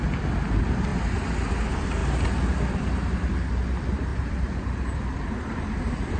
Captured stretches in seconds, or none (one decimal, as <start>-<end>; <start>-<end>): 0.0-6.2